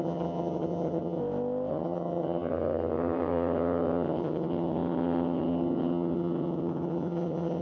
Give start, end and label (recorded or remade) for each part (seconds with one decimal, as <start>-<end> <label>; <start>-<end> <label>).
0.0-1.2 remade; 1.2-1.7 recorded; 1.7-7.6 remade